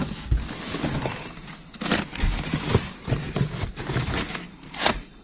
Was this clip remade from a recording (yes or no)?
no